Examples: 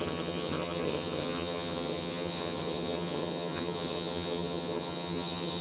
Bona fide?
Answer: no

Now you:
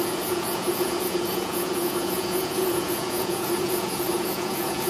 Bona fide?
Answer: no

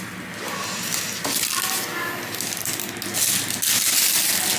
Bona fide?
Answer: yes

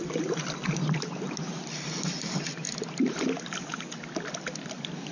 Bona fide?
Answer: yes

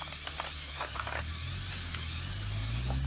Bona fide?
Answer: yes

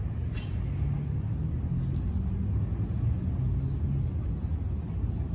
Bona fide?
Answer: yes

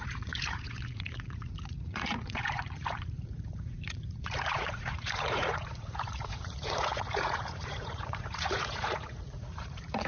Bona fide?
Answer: no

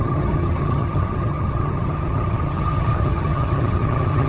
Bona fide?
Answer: no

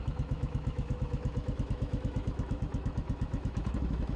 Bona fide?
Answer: no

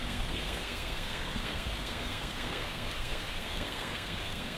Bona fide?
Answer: no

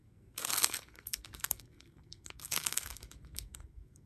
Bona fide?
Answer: no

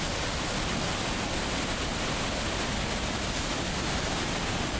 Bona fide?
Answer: yes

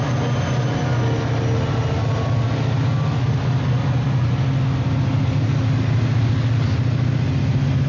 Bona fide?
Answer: yes